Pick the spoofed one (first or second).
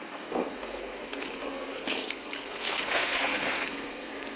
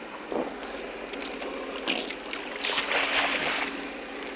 first